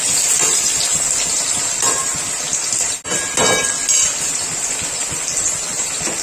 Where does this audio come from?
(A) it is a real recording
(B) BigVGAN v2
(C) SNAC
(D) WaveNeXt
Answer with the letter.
A